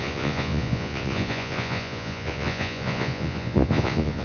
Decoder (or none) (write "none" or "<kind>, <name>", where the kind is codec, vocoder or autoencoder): vocoder, Vocos